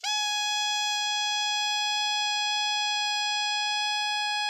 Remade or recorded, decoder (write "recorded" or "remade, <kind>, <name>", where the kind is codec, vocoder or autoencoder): recorded